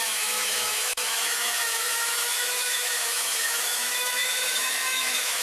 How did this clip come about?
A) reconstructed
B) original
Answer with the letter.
A